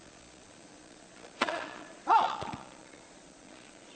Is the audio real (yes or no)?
no